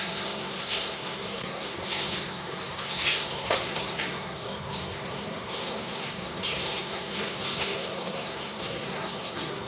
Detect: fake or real fake